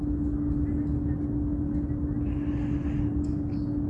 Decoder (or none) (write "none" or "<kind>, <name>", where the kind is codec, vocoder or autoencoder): none